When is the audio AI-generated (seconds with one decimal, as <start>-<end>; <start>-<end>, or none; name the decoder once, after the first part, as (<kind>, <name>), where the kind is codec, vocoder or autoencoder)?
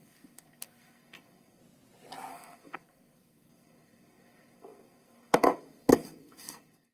0.0-1.6 (codec, SNAC); 2.3-6.9